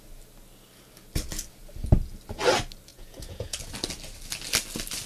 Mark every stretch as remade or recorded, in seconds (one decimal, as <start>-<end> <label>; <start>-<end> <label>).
0.0-2.9 recorded; 2.9-3.6 remade; 3.6-5.1 recorded